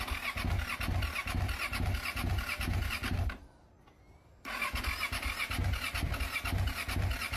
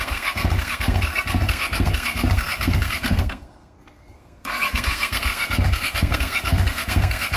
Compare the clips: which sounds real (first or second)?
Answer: first